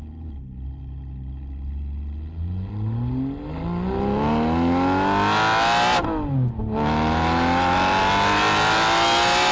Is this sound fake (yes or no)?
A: no